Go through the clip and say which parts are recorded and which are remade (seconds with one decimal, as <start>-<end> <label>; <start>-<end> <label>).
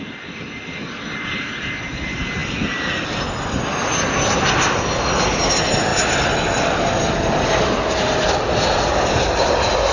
0.0-9.9 recorded